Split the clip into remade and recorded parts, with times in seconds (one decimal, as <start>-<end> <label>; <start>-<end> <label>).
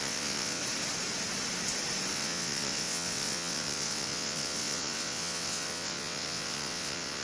0.0-0.6 remade; 0.6-2.1 recorded; 2.1-7.2 remade